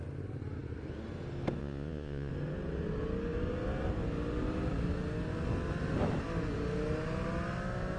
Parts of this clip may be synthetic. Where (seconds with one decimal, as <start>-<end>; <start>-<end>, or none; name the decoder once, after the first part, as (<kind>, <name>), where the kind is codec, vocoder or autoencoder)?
1.6-2.3 (vocoder, Vocos)